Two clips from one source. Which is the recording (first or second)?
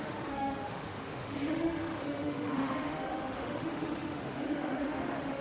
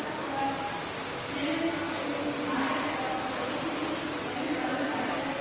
second